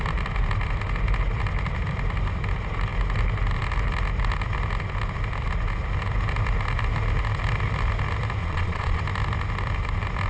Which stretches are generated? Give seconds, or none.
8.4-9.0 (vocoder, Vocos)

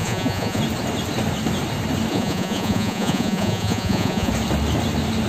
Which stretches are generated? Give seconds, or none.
0.0-0.6 (vocoder, Vocos); 2.1-4.3

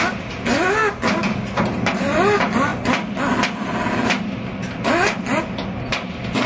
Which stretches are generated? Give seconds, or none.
none

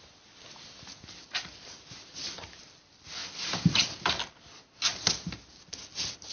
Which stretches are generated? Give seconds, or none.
none

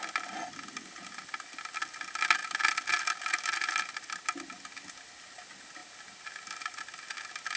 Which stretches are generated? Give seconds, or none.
none

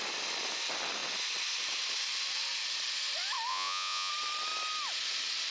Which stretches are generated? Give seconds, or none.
3.5-4.1 (vocoder, Vocos)